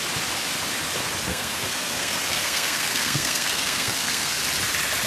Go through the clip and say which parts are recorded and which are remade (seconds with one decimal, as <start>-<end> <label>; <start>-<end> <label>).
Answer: 0.0-1.3 recorded; 1.3-4.4 remade; 4.4-5.1 recorded